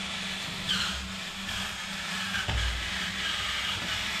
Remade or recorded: recorded